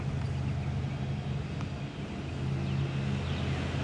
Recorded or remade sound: recorded